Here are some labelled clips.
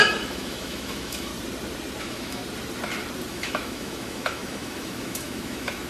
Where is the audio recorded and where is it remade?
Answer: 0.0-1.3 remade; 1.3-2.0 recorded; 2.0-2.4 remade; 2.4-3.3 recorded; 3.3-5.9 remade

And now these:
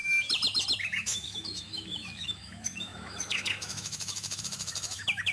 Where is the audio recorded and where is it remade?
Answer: 0.0-0.8 recorded; 0.8-5.3 remade

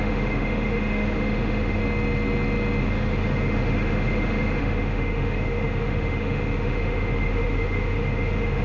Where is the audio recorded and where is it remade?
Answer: 0.0-1.8 remade; 1.8-2.8 recorded; 2.8-8.6 remade

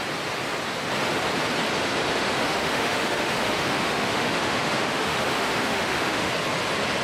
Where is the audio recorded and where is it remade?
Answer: 0.0-2.1 recorded; 2.1-6.3 remade; 6.3-7.0 recorded

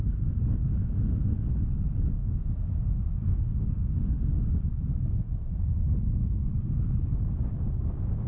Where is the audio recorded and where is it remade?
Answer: 0.0-3.3 recorded; 3.3-4.5 remade; 4.5-8.3 recorded

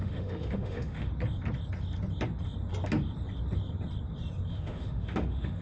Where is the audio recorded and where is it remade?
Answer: 0.0-1.1 remade; 1.1-4.5 recorded; 4.5-5.6 remade

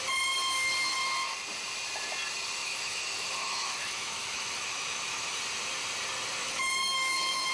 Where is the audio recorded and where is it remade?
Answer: 0.0-2.6 recorded; 2.6-5.4 remade; 5.4-6.4 recorded; 6.4-7.5 remade

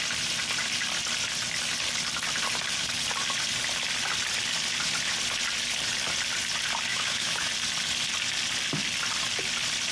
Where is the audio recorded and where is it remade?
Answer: 0.0-6.9 recorded; 6.9-7.5 remade; 7.5-9.9 recorded